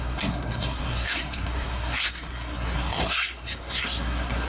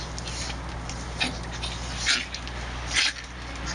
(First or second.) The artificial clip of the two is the first